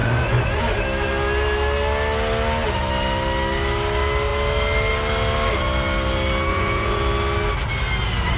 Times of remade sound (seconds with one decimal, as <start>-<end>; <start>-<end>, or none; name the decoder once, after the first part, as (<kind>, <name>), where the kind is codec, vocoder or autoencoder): 0.0-0.6 (vocoder, Vocos); 6.5-7.0